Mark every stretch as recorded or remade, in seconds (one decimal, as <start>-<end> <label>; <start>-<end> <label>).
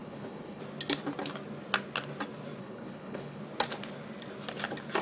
0.0-0.6 remade; 0.6-2.6 recorded; 2.6-3.4 remade; 3.4-5.0 recorded